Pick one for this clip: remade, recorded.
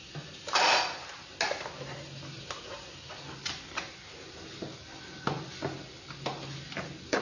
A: recorded